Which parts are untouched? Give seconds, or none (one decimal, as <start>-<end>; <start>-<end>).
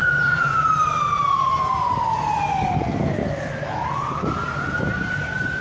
0.7-5.6